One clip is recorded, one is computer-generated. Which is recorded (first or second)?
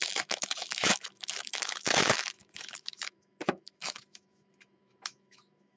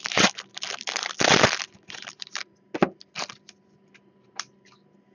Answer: second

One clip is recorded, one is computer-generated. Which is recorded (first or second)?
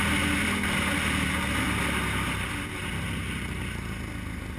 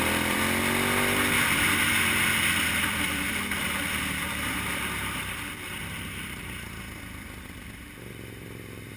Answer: first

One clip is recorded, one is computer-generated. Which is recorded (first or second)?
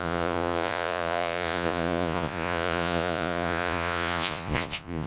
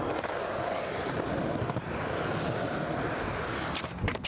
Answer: second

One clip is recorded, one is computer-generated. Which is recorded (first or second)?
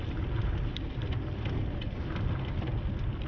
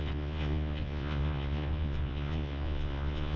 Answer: first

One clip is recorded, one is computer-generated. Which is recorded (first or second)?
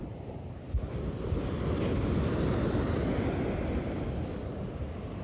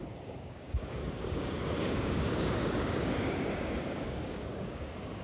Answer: first